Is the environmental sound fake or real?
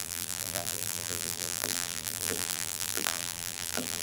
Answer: fake